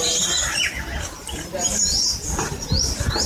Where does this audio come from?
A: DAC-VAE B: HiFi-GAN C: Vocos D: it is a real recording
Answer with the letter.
D